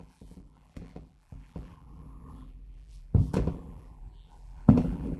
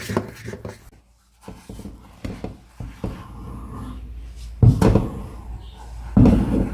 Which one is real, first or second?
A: second